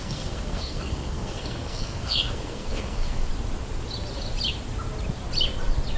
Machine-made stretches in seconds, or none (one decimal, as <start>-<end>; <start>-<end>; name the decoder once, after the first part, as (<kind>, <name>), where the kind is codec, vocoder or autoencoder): 0.0-3.3 (codec, SNAC)